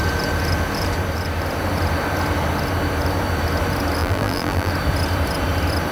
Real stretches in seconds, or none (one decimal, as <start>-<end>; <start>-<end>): 0.0-4.0; 4.7-5.9